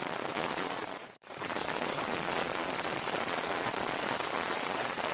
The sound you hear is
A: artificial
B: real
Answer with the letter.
A